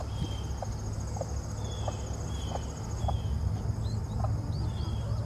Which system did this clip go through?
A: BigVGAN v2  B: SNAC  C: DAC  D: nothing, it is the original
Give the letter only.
D